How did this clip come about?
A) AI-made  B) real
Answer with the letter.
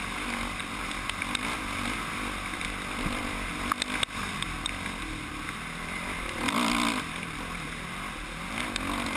B